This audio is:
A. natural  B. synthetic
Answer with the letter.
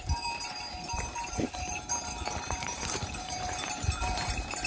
B